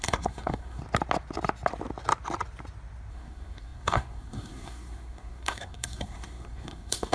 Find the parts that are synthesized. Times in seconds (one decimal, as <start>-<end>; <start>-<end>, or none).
0.0-0.8; 3.1-7.1